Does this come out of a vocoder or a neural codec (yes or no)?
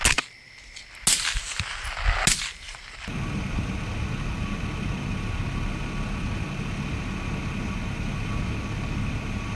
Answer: no